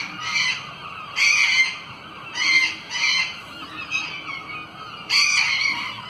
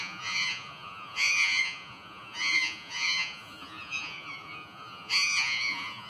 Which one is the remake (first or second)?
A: second